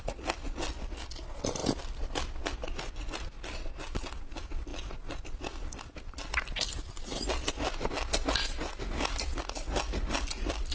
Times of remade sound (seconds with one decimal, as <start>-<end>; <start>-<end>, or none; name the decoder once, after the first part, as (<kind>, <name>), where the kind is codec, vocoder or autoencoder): none